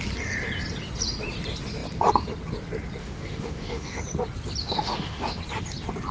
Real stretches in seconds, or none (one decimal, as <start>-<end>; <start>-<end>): 0.0-3.0; 4.0-4.6; 5.4-6.1